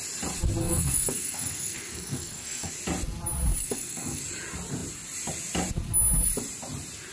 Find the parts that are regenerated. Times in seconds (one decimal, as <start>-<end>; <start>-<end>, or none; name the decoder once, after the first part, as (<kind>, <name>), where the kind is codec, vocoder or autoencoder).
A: 0.6-2.7 (codec, SNAC); 3.6-4.2